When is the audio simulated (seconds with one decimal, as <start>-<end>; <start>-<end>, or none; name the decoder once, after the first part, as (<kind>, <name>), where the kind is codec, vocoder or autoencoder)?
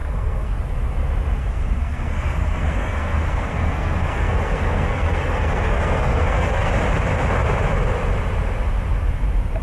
0.0-0.6 (codec, SNAC); 1.4-6.7